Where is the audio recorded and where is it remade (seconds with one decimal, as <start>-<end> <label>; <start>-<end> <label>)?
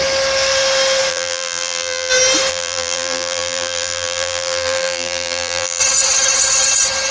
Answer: 0.0-1.1 recorded; 1.1-2.1 remade; 2.1-2.5 recorded; 2.5-5.8 remade; 5.8-7.1 recorded